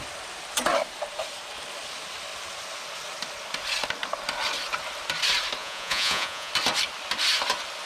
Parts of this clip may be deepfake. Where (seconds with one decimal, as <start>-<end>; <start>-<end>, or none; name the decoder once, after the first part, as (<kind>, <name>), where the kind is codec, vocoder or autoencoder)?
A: 5.6-6.5 (vocoder, Vocos)